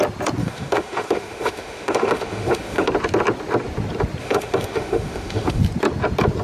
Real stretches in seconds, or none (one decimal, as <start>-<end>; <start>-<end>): 0.0-0.4; 2.9-4.2; 5.6-6.4